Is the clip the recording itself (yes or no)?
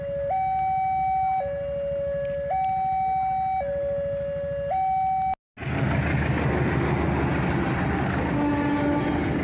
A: yes